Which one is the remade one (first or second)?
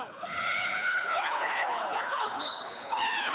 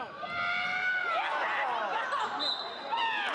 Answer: first